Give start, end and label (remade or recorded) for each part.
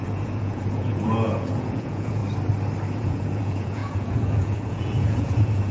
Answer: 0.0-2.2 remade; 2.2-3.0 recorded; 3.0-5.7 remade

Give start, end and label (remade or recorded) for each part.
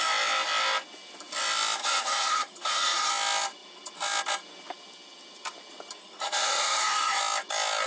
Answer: 0.0-1.8 recorded; 1.8-3.1 remade; 3.1-6.0 recorded; 6.0-7.2 remade; 7.2-7.9 recorded